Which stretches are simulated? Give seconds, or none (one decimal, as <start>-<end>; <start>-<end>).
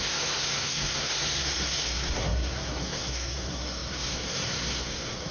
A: 0.0-5.3